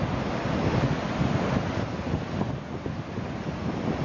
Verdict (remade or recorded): recorded